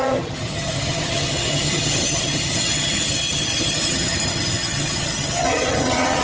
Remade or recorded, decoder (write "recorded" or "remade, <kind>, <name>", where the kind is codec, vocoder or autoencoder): remade, vocoder, HiFi-GAN